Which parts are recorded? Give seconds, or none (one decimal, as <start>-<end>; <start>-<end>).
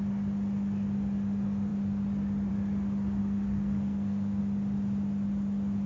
0.0-3.2; 4.4-5.9